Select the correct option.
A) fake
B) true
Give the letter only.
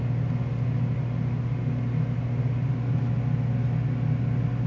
B